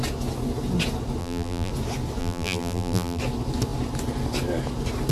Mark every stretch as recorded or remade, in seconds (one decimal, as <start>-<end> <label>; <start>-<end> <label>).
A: 0.0-1.2 recorded; 1.2-1.7 remade; 1.7-2.2 recorded; 2.2-3.2 remade; 3.2-5.1 recorded